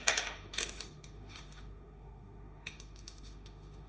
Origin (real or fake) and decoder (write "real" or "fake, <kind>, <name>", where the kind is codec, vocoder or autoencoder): fake, autoencoder, DAC-VAE